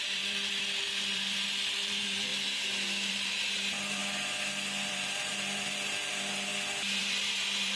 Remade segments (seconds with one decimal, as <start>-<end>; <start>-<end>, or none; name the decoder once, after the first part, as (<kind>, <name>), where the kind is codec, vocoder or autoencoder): 0.0-2.3 (vocoder, BigVGAN v2); 3.1-4.0; 4.9-6.5; 7.0-7.8